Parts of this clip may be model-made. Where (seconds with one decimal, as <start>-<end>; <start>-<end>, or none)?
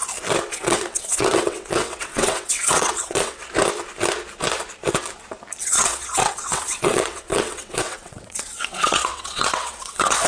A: 0.5-3.4; 5.6-10.3